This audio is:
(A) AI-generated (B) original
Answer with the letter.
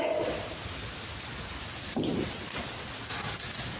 B